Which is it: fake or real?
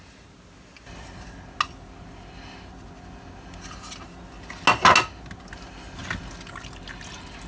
real